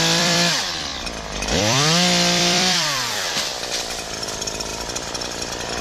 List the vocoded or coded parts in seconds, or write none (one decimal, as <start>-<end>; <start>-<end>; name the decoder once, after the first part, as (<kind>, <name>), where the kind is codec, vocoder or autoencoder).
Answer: 0.0-4.7 (vocoder, BigVGAN v2)